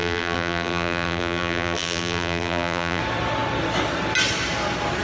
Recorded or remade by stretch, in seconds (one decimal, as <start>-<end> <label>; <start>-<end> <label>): 0.0-3.0 remade; 3.0-5.0 recorded